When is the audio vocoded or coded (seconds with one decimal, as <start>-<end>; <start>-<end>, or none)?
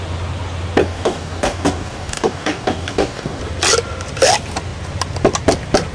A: 0.8-3.4